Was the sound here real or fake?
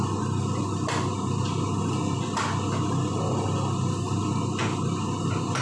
real